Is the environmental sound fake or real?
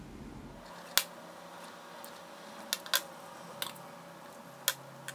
real